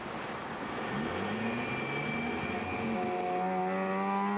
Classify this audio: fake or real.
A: real